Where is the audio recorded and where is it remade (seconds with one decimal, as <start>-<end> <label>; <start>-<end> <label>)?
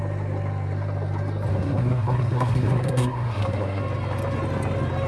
0.0-1.5 recorded; 1.5-3.8 remade; 3.8-5.1 recorded